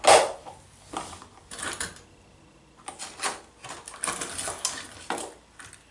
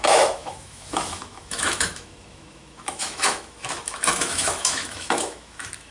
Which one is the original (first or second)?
first